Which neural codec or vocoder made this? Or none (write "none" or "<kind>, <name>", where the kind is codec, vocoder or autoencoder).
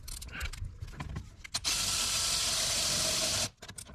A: none